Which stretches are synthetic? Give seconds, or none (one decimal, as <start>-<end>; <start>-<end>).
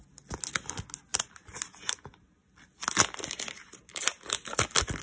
none